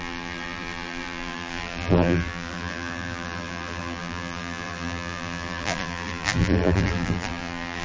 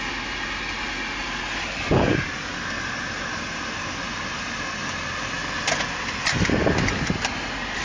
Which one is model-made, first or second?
first